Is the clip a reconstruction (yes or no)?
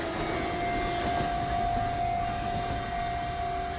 no